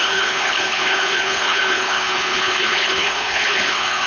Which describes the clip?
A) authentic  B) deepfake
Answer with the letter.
B